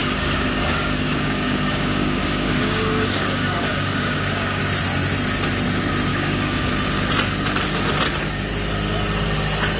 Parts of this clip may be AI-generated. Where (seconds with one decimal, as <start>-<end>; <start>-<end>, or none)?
0.0-4.6; 6.1-6.7